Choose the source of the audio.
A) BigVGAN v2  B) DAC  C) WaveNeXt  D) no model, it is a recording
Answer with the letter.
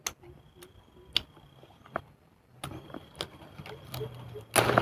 D